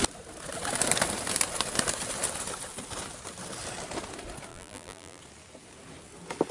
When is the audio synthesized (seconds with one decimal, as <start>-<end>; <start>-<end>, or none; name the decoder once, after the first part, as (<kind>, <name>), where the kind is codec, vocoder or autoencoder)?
4.5-5.2 (vocoder, BigVGAN v2)